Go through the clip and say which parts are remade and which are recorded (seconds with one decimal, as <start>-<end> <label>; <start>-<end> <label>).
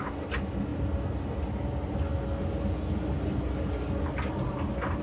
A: 0.0-5.0 recorded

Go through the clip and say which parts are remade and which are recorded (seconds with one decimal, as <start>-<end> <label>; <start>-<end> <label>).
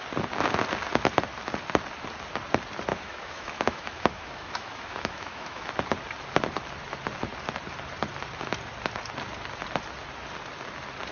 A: 0.0-2.9 recorded; 2.9-5.7 remade; 5.7-11.1 recorded